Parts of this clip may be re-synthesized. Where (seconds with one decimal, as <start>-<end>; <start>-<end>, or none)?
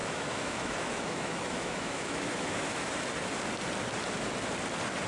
0.0-2.9